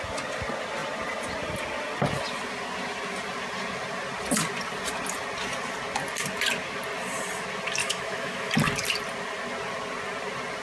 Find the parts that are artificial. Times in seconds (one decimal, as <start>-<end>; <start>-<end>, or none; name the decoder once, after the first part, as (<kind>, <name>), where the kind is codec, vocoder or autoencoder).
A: 7.8-8.5 (autoencoder, DAC-VAE)